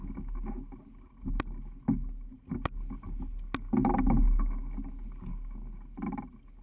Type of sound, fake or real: real